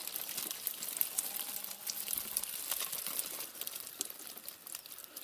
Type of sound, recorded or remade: recorded